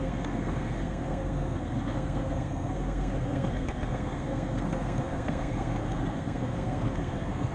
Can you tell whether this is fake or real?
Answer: fake